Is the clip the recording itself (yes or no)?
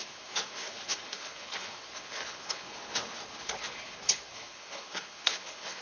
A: no